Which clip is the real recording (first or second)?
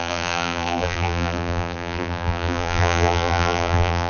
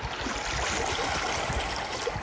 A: second